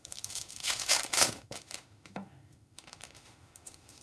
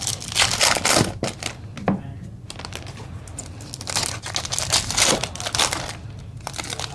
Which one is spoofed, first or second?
first